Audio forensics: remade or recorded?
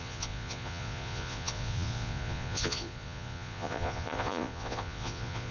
remade